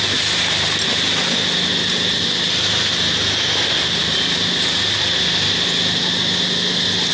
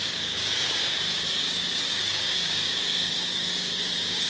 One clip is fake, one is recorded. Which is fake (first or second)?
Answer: second